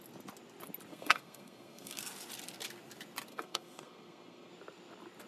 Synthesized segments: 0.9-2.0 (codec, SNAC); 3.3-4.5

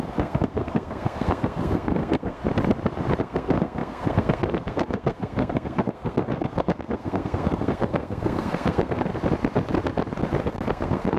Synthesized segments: 0.0-2.4 (codec, SNAC); 3.2-9.1; 10.4-11.2